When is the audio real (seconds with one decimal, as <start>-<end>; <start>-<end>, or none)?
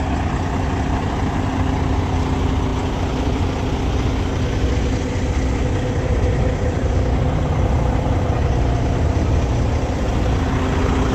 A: 0.0-11.1